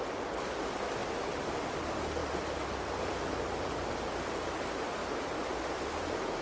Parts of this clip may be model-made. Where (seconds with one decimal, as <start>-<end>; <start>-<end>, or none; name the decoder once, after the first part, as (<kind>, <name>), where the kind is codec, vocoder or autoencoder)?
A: none